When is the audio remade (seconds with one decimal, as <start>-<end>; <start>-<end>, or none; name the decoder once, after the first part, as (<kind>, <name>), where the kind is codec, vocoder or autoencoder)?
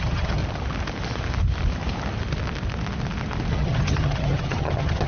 0.0-0.4 (vocoder, HiFi-GAN); 3.5-5.1